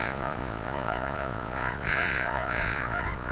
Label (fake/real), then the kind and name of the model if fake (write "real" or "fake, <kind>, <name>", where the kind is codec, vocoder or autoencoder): fake, vocoder, Vocos